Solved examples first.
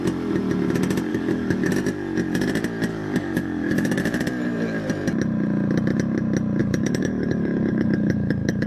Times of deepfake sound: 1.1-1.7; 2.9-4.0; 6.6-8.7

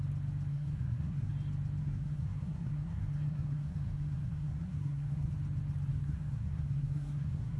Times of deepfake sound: 0.5-1.3; 1.8-5.3; 5.9-7.6